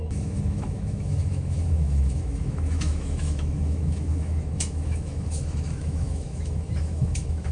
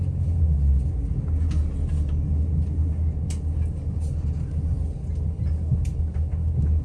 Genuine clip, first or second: second